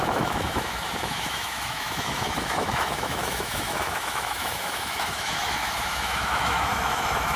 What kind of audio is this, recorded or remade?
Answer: remade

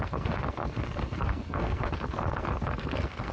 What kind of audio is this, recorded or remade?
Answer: remade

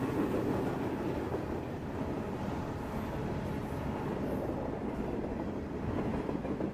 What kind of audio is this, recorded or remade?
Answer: recorded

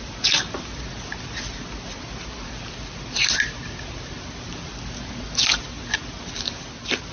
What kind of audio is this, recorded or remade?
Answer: recorded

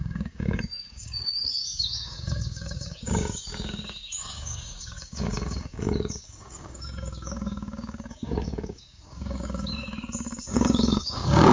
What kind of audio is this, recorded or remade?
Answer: remade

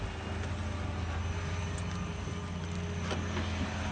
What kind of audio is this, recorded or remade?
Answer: recorded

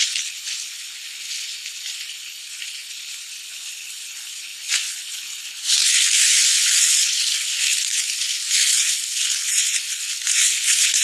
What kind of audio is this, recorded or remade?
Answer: remade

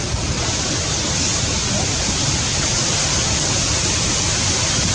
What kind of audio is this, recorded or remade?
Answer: recorded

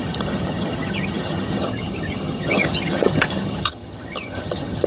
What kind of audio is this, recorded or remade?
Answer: remade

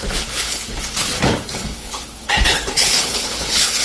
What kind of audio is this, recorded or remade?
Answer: remade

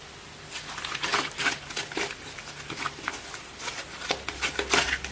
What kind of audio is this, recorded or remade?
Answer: recorded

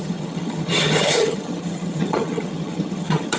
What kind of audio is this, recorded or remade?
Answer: remade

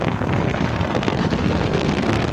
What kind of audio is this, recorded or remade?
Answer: remade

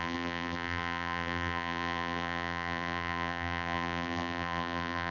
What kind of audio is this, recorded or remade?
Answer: remade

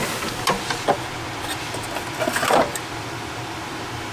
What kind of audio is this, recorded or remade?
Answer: recorded